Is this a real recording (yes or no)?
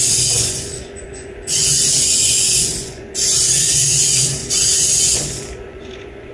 no